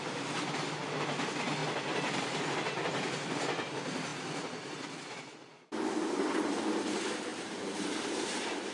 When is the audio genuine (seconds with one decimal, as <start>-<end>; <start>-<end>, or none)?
0.0-7.3